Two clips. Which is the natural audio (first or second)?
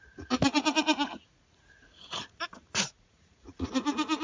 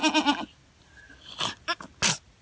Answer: second